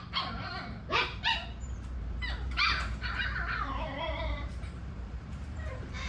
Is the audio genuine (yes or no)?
no